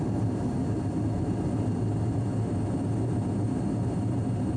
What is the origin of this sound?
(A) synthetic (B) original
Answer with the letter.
A